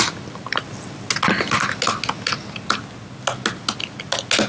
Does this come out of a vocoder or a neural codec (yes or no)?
no